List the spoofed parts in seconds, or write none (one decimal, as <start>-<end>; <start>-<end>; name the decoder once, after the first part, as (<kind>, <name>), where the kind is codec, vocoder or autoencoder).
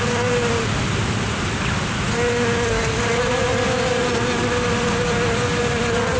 none